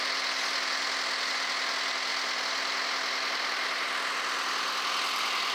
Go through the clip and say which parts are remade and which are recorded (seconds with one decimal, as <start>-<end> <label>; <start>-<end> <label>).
0.0-5.5 recorded

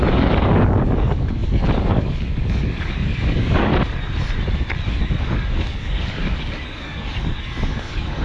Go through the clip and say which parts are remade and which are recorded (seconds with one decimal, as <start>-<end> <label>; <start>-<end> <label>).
0.0-3.7 remade; 3.7-5.0 recorded; 5.0-8.2 remade

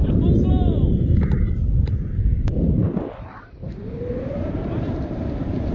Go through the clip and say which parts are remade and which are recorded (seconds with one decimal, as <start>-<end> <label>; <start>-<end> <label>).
0.0-2.8 remade; 2.8-3.7 recorded; 3.7-5.7 remade

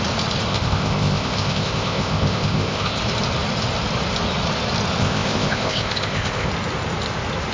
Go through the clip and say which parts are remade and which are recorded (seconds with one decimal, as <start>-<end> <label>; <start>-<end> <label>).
0.0-0.5 recorded; 0.5-3.0 remade; 3.0-5.0 recorded; 5.0-6.5 remade; 6.5-7.5 recorded

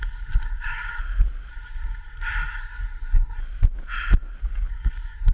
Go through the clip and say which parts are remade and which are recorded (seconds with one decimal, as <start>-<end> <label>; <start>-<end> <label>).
0.0-1.0 remade; 1.0-1.5 recorded; 1.5-3.4 remade; 3.4-4.7 recorded; 4.7-5.3 remade